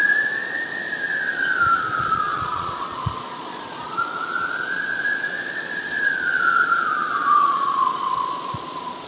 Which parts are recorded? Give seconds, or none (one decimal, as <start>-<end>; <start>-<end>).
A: none